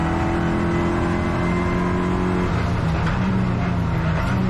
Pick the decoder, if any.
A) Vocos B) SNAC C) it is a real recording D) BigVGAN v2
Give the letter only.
C